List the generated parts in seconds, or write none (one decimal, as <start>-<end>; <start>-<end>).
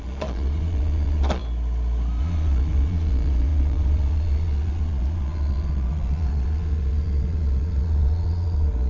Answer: 0.0-1.4; 2.2-8.9